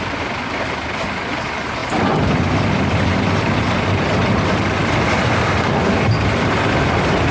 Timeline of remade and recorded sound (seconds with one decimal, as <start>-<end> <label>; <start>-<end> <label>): 0.0-7.3 recorded